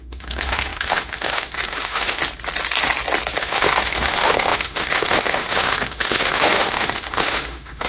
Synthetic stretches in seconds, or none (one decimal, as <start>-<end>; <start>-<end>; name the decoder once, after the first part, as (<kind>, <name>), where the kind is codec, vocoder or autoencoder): 0.0-2.2 (autoencoder, DAC-VAE); 3.4-7.9

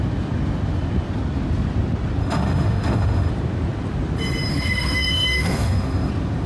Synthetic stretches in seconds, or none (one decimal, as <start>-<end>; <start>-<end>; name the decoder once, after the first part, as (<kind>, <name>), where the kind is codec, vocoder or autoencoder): 2.2-3.3 (autoencoder, DAC-VAE); 4.5-6.1

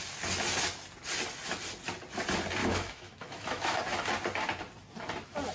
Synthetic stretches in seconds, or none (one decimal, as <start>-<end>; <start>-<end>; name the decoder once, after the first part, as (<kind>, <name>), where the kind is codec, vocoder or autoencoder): 2.6-3.8 (autoencoder, DAC-VAE)

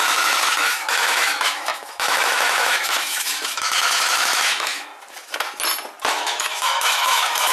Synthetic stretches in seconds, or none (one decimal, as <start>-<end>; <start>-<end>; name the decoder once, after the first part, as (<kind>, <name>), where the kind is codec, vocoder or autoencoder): 0.0-4.9 (autoencoder, DAC-VAE); 6.1-7.5

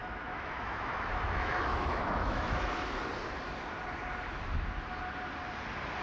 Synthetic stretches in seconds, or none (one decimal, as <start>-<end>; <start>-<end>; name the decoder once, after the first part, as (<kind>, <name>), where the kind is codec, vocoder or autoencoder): 0.0-3.0 (autoencoder, DAC-VAE)

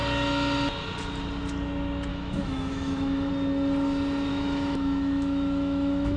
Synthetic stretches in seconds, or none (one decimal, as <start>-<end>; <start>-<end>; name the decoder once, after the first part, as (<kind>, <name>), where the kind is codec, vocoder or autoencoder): 2.1-3.3 (autoencoder, DAC-VAE); 4.3-6.2

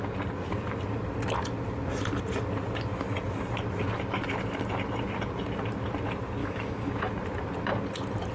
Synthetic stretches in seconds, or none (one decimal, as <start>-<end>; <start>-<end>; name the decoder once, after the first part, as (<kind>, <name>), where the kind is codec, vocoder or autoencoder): 6.4-6.9 (autoencoder, DAC-VAE)